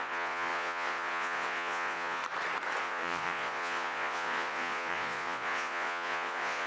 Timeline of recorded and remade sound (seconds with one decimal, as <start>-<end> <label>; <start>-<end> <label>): 0.0-2.2 remade; 2.2-2.8 recorded; 2.8-6.7 remade

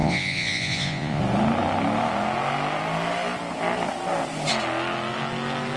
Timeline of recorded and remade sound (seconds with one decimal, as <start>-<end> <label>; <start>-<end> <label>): 0.0-1.2 remade; 1.2-5.8 recorded